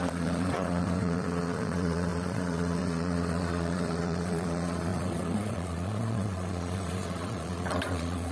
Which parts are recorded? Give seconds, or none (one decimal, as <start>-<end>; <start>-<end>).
none